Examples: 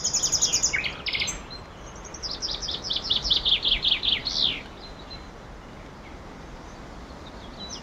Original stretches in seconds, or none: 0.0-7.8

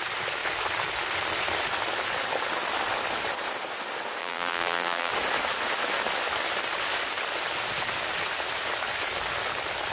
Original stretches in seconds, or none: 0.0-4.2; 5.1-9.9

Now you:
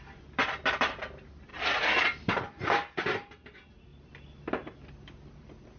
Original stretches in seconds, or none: 0.0-1.5; 2.3-3.9

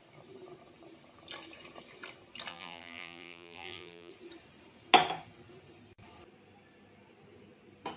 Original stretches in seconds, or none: 0.0-2.5; 4.1-8.0